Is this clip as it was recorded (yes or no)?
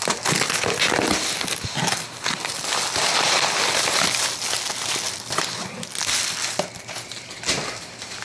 yes